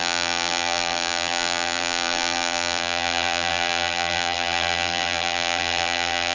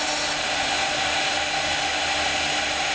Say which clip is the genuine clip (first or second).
second